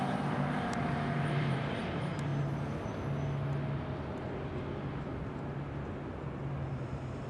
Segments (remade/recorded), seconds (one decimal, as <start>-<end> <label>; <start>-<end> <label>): 0.0-2.3 remade; 2.3-6.7 recorded; 6.7-7.3 remade